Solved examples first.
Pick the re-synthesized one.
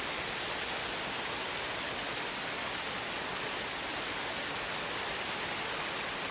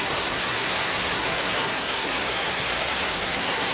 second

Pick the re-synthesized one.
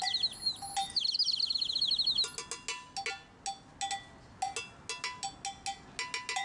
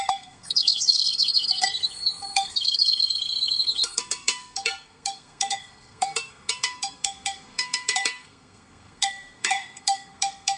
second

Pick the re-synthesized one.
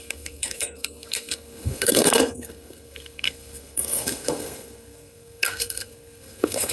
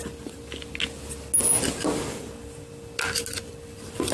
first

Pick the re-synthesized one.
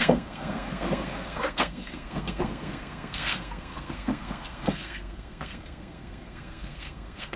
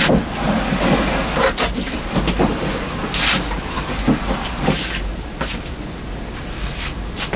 first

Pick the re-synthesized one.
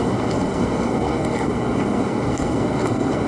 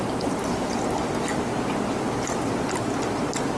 first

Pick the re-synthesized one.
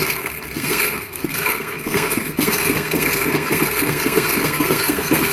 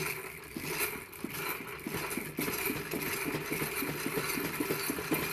first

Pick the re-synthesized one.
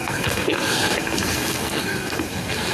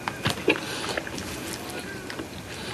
first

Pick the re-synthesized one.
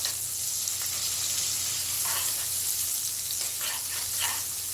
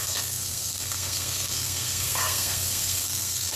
second